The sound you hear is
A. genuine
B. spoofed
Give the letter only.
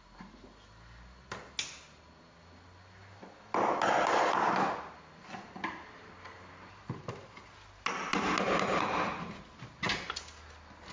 A